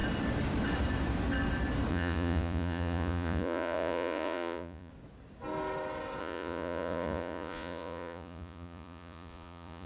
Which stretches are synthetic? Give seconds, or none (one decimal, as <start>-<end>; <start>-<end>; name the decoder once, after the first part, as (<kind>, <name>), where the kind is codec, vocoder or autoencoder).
1.9-4.9 (vocoder, Vocos); 6.2-9.9